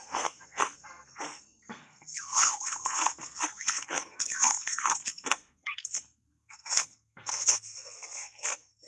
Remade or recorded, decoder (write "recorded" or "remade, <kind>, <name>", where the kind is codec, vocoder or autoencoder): remade, codec, SNAC